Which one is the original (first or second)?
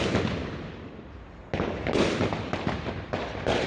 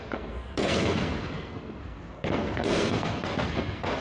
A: first